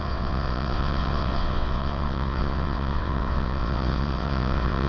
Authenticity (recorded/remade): remade